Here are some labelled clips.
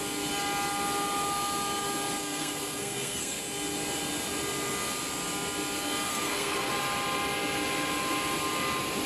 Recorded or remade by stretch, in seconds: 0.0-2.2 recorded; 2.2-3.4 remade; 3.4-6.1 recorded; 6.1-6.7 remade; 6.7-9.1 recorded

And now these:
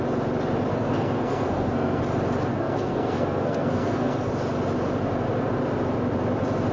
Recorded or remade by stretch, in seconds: 0.0-0.7 recorded; 0.7-2.0 remade; 2.0-2.5 recorded; 2.5-4.3 remade; 4.3-6.7 recorded

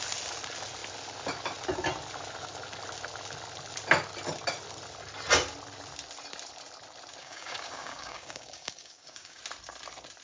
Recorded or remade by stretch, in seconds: 0.0-7.2 recorded; 7.2-9.4 remade; 9.4-10.2 recorded

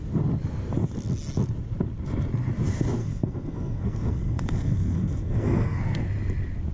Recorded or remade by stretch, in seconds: 0.0-3.0 recorded; 3.0-6.0 remade; 6.0-6.7 recorded

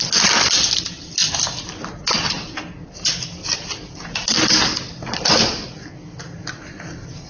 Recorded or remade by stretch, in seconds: 0.0-3.4 recorded; 3.4-6.8 remade; 6.8-7.3 recorded

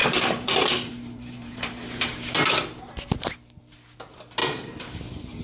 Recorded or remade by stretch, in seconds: 0.0-2.5 remade; 2.5-4.4 recorded; 4.4-5.4 remade

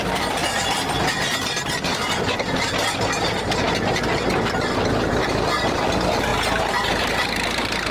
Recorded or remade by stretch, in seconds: 0.0-6.3 remade; 6.3-7.0 recorded; 7.0-7.9 remade

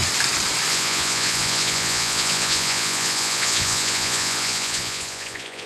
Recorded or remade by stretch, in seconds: 0.0-0.7 recorded; 0.7-5.7 remade